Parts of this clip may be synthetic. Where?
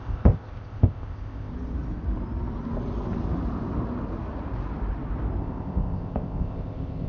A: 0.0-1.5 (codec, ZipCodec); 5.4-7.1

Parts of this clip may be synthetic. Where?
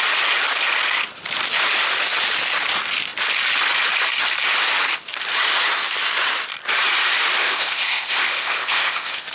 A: 7.4-9.3 (codec, ZipCodec)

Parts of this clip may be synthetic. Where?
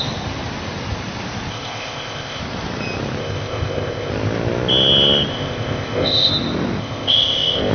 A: 1.5-2.4 (codec, ZipCodec); 3.2-4.1; 5.3-6.3; 6.8-7.7